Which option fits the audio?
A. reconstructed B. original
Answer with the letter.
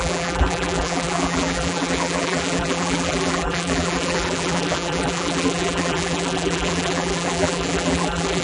A